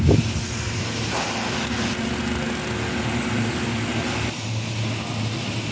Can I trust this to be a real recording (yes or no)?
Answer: yes